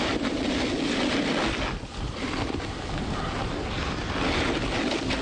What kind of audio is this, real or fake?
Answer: real